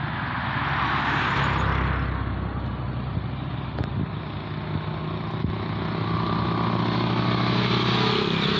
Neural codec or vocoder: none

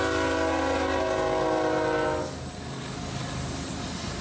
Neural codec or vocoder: none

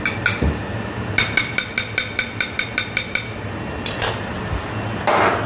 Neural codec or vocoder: none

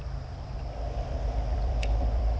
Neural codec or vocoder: vocoder, BigVGAN v2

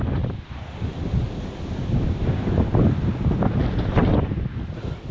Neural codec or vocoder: none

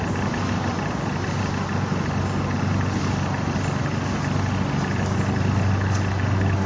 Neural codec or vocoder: none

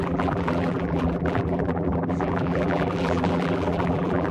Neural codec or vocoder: vocoder, BigVGAN v2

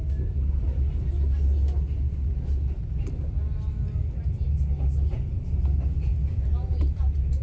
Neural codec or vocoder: none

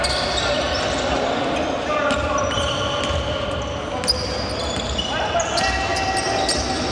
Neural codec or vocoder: none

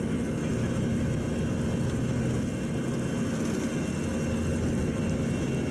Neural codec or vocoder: none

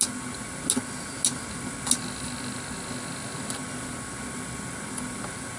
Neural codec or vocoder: none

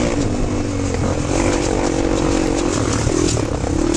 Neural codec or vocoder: none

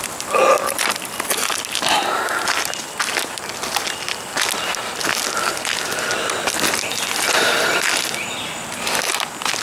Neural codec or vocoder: none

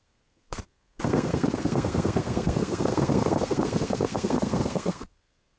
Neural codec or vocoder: codec, SNAC